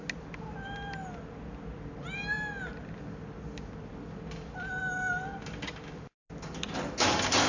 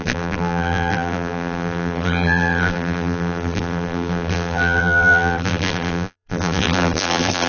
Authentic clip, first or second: first